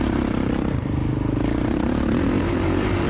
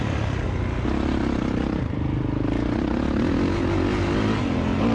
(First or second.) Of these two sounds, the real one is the second